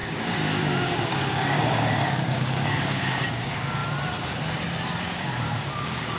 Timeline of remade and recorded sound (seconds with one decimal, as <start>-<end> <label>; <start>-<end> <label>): 0.0-3.8 remade; 3.8-5.0 recorded; 5.0-6.2 remade